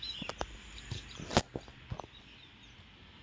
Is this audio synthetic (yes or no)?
no